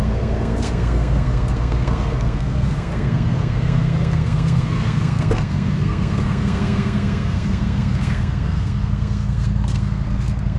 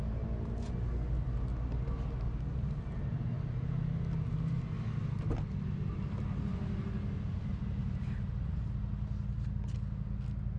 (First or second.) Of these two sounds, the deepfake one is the first